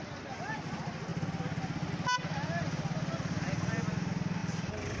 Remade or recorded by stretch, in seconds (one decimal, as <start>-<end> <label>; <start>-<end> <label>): 0.0-5.0 recorded